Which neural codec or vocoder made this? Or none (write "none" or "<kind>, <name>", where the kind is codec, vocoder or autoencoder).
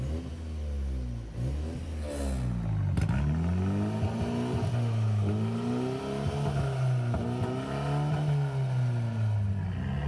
none